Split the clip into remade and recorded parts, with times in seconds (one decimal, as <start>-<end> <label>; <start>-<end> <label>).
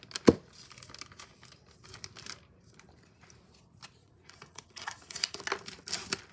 0.0-4.0 recorded; 4.0-5.4 remade; 5.4-6.3 recorded